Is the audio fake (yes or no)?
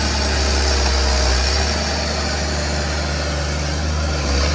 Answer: no